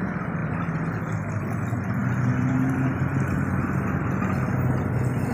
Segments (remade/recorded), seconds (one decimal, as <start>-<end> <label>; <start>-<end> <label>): 0.0-5.3 recorded